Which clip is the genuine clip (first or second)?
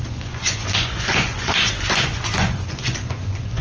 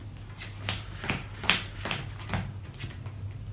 second